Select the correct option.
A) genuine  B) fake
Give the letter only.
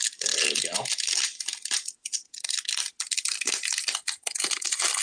A